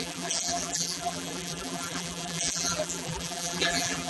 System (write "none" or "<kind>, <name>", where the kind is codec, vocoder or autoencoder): vocoder, BigVGAN v2